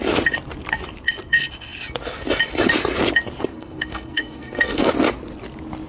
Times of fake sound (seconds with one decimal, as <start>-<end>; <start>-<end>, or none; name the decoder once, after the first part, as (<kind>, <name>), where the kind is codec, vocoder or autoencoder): 3.5-4.9 (codec, SNAC)